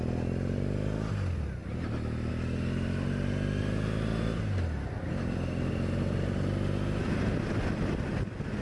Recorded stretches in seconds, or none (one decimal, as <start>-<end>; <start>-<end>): 0.0-8.6